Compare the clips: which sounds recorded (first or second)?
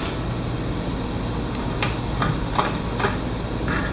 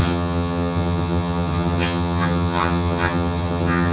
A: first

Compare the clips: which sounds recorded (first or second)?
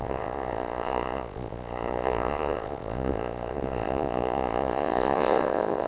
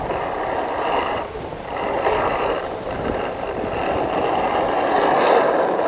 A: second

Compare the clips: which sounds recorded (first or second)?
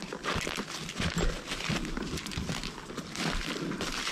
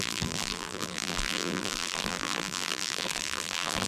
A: first